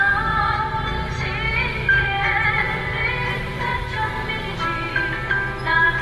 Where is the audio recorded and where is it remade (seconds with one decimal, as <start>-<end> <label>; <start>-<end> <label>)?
0.0-1.7 recorded; 1.7-3.8 remade; 3.8-6.0 recorded